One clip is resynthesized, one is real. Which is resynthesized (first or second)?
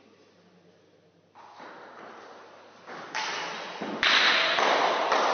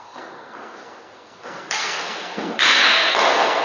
second